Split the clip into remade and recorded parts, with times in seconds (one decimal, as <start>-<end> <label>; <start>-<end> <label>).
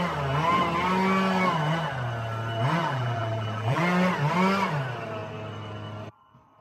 0.0-2.8 recorded; 2.8-3.8 remade; 3.8-6.6 recorded